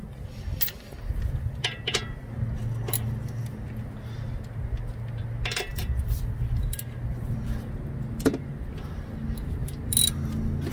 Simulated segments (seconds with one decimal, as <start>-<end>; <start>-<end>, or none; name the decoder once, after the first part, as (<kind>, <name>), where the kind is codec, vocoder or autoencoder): 5.7-6.6 (vocoder, BigVGAN v2)